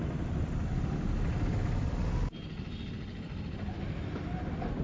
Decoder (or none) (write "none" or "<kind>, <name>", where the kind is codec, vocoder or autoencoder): none